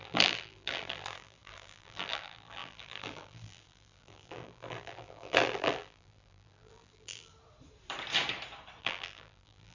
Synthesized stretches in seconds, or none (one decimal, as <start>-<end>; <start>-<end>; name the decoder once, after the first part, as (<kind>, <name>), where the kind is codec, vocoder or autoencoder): 0.0-7.3 (vocoder, BigVGAN v2); 8.8-9.7